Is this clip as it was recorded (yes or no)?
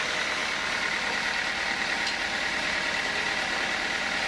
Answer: yes